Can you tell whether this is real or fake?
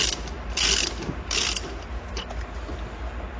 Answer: real